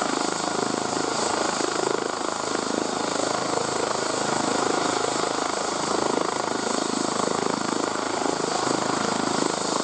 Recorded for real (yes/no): yes